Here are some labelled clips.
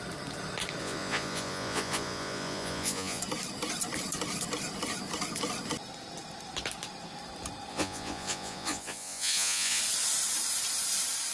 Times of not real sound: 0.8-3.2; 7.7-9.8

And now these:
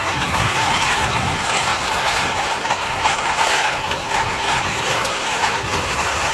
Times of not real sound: 0.0-6.3

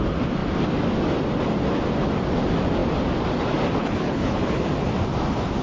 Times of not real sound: 3.8-4.6

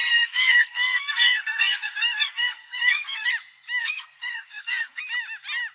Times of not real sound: 0.0-3.3; 3.8-5.0

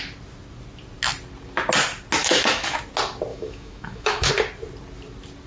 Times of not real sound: 2.2-2.8; 3.3-4.3

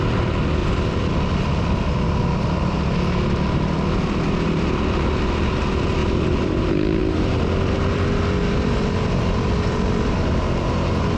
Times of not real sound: 0.6-2.8; 6.0-6.6; 7.0-10.4

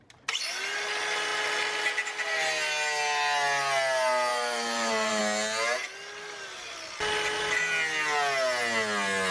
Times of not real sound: 4.3-5.2